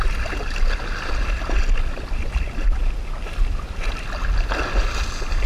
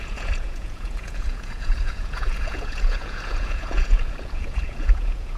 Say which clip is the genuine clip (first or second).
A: first